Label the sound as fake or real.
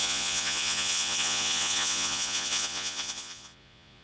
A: fake